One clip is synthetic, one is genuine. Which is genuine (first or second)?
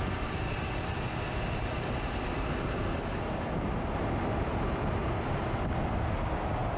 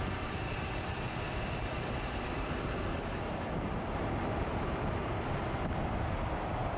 first